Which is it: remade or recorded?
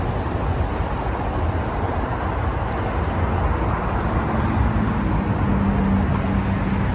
recorded